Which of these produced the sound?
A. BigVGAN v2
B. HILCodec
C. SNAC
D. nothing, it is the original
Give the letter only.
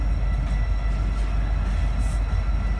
D